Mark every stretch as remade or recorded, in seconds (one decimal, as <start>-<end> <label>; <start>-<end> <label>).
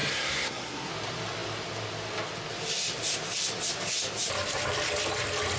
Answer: 0.0-0.9 remade; 0.9-5.6 recorded